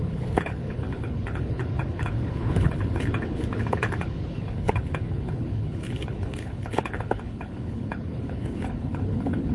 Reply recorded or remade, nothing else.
remade